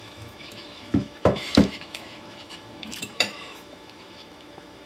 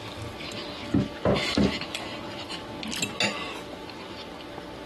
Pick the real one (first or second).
second